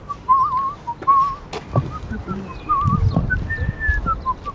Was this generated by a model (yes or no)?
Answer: no